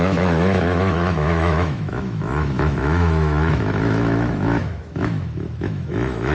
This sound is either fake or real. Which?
fake